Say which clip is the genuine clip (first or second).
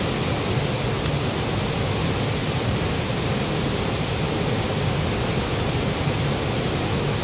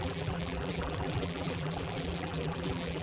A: first